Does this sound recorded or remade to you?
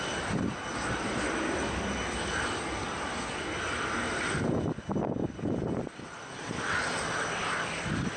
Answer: recorded